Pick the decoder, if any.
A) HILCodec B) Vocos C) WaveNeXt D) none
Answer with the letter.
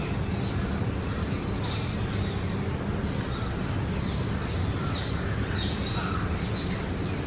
D